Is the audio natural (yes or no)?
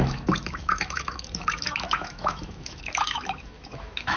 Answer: no